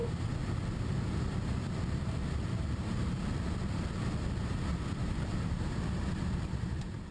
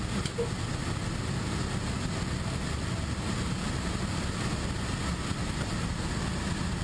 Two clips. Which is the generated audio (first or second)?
first